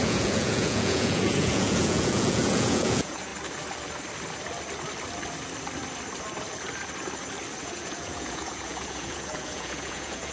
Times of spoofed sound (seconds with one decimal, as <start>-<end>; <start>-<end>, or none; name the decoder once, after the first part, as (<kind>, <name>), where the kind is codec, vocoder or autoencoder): 0.0-3.3 (vocoder, Vocos); 7.6-10.3